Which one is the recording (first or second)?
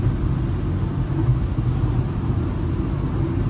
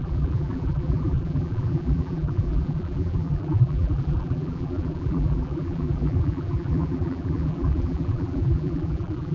first